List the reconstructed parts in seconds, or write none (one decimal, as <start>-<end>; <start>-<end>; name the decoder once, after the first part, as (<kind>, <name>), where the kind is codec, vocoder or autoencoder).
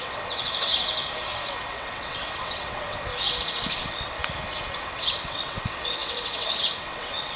0.0-0.7 (vocoder, WaveNeXt); 1.7-3.1; 3.8-4.2; 4.8-7.4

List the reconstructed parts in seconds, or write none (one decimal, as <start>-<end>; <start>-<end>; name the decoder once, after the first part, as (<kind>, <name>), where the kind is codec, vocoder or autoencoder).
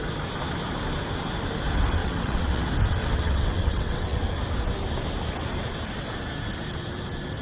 2.0-2.6 (vocoder, WaveNeXt); 3.0-4.3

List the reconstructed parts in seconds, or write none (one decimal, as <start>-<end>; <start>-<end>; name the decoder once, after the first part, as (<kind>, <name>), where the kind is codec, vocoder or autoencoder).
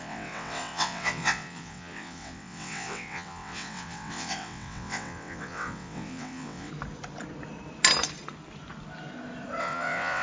0.0-6.7 (vocoder, WaveNeXt); 9.6-10.2